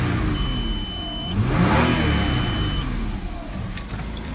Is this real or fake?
real